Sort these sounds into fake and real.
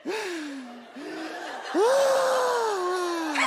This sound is real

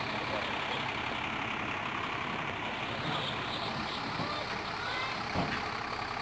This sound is real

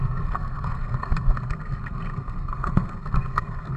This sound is fake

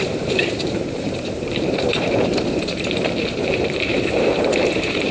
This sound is fake